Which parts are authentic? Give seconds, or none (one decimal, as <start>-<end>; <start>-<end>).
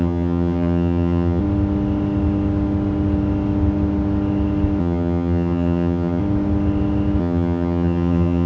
1.4-4.8; 6.2-7.2